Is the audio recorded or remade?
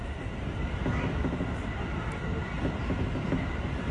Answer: recorded